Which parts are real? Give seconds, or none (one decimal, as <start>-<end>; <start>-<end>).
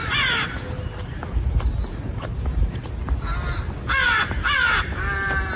0.0-5.6